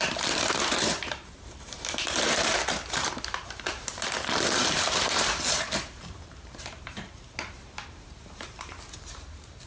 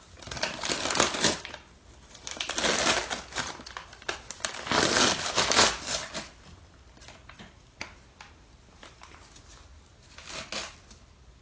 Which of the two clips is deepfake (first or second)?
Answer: first